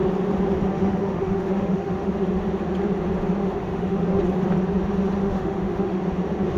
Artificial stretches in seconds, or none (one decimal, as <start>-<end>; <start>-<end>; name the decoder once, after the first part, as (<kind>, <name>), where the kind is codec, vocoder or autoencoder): 0.7-2.1 (autoencoder, DAC-VAE); 3.4-4.2; 5.2-6.0